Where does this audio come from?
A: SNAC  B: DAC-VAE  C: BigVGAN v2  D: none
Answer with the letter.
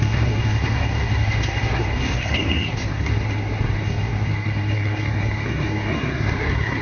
A